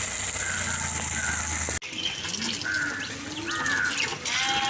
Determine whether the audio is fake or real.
real